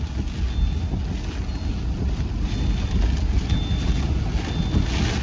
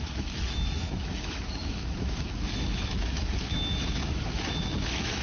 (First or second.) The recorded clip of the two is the first